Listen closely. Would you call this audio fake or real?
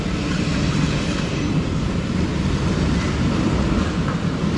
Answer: fake